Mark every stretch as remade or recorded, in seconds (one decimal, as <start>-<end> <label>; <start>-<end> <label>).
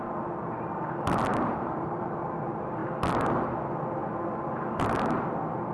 0.0-1.3 recorded; 1.3-2.1 remade; 2.1-4.0 recorded; 4.0-4.8 remade; 4.8-5.7 recorded